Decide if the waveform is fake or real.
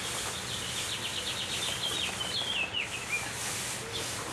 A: real